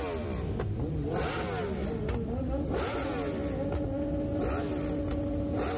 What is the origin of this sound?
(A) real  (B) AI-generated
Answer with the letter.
A